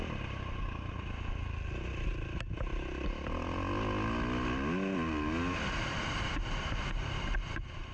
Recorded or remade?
recorded